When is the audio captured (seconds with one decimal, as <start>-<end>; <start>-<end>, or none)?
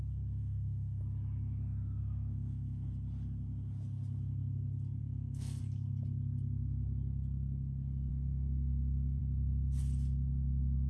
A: 0.0-0.4; 1.0-2.0; 2.9-5.0; 5.6-8.1; 9.2-10.9